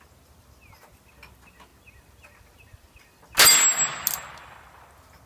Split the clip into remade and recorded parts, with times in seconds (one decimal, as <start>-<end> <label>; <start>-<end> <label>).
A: 0.0-5.3 recorded